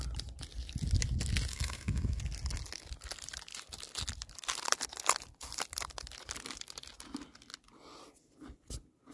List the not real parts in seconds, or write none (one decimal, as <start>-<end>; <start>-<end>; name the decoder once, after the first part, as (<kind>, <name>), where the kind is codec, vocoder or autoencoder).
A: 1.5-2.2 (codec, SNAC)